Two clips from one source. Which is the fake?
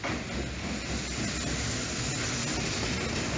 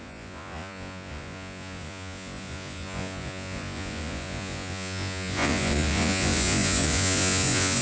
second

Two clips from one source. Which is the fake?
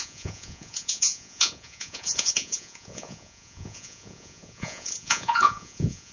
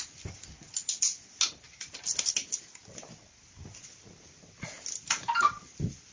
first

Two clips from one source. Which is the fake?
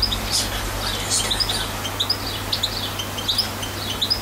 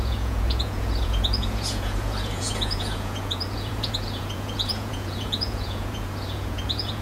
second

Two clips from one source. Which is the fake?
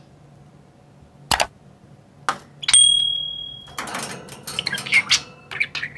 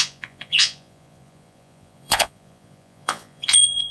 second